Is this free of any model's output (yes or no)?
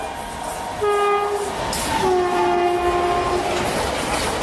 yes